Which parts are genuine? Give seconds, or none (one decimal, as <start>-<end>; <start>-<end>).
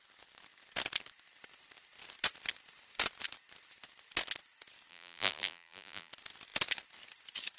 0.0-4.9; 6.1-7.6